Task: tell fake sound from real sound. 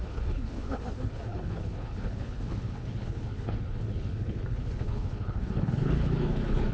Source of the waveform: fake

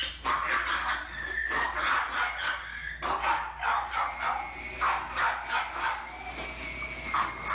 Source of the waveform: real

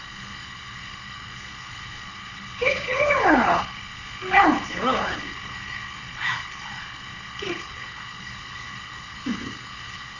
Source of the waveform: fake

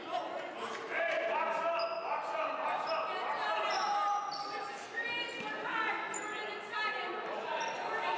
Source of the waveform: real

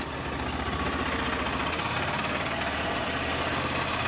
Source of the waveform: real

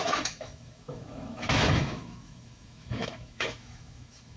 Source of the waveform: fake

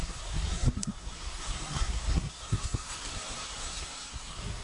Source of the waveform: fake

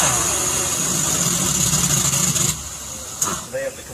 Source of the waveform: real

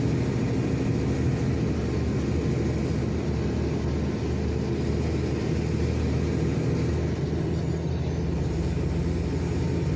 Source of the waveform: real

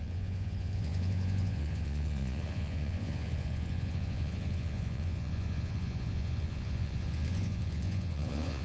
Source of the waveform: fake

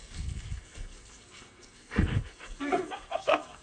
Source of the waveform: fake